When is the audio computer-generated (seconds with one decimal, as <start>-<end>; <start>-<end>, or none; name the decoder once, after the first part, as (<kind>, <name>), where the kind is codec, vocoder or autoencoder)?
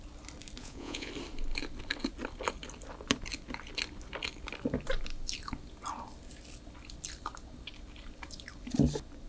0.6-1.1 (vocoder, Vocos)